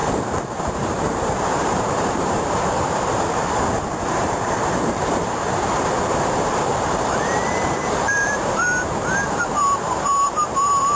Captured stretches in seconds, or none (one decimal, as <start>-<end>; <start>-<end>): none